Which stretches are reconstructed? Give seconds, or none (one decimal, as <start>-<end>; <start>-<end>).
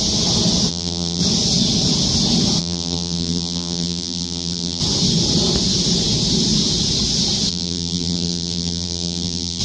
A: 0.7-1.2; 2.6-4.8; 7.5-9.6